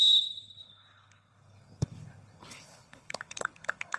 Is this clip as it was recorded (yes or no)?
no